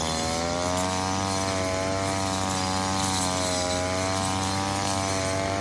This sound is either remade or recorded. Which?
recorded